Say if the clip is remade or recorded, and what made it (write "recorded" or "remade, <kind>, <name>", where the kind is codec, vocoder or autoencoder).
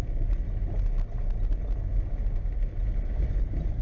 recorded